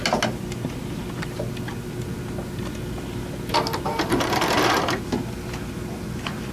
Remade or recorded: recorded